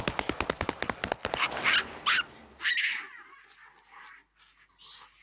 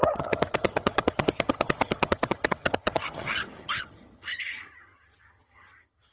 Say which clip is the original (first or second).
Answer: first